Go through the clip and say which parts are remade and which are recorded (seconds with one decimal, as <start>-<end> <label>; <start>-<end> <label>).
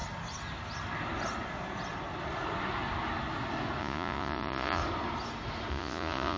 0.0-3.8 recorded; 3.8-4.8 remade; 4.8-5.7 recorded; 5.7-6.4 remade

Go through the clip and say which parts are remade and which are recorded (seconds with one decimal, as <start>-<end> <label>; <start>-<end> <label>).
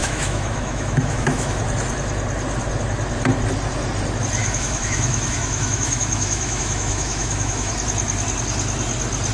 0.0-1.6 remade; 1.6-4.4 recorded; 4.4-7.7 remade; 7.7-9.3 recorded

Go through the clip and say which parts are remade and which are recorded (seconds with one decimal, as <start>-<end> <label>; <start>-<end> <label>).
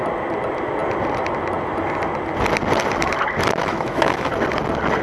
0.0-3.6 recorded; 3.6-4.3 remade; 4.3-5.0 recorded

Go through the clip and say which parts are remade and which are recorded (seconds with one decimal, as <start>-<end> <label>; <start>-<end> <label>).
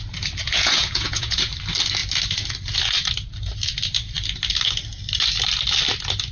0.0-0.4 recorded; 0.4-1.5 remade; 1.5-6.3 recorded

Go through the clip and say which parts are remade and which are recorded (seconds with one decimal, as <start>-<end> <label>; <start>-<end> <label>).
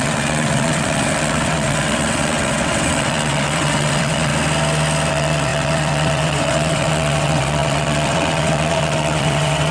0.0-4.3 remade; 4.3-5.1 recorded; 5.1-9.7 remade